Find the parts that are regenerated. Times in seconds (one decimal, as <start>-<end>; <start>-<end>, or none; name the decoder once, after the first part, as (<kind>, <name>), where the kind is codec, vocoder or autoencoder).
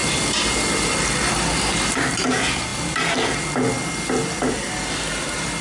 none